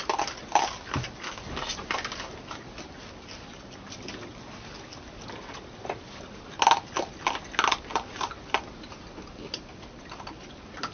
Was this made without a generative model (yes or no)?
yes